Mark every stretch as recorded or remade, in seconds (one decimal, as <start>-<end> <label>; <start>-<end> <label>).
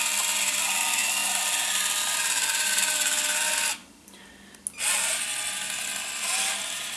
0.0-7.0 recorded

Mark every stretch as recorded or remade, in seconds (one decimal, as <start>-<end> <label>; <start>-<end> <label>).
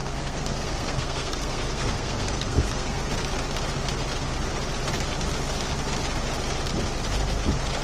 0.0-3.0 remade; 3.0-7.8 recorded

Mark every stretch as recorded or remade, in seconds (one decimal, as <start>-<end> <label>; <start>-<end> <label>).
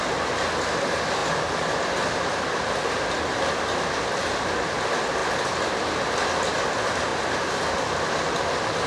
0.0-8.9 recorded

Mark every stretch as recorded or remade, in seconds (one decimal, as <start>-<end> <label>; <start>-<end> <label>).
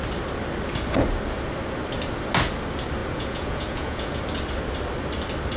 0.0-3.0 recorded; 3.0-4.2 remade; 4.2-5.6 recorded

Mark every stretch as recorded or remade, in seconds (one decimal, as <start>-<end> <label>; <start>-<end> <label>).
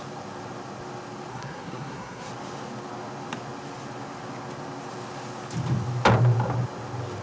0.0-1.3 recorded; 1.3-2.3 remade; 2.3-7.2 recorded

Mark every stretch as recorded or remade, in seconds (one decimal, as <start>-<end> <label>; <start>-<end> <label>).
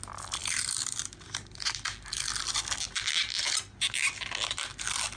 0.0-5.2 recorded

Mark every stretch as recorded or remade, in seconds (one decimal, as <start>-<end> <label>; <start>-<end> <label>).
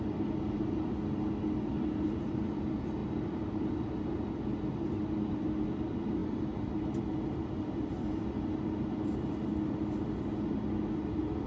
0.0-11.5 recorded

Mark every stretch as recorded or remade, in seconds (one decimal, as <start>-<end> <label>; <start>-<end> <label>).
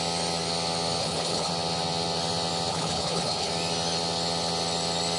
0.0-1.0 recorded; 1.0-1.5 remade; 1.5-2.7 recorded; 2.7-3.5 remade; 3.5-5.2 recorded